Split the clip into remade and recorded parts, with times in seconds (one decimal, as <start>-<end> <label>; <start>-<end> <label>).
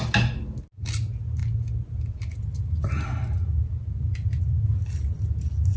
0.0-5.8 recorded